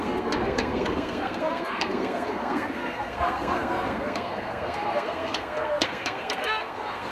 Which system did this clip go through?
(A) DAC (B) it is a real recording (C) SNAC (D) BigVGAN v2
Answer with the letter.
C